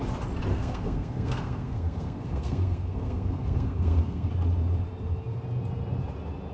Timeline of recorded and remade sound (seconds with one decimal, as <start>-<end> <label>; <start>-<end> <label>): 0.0-0.5 recorded; 0.5-4.3 remade; 4.3-6.5 recorded